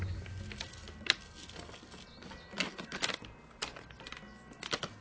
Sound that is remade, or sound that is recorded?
recorded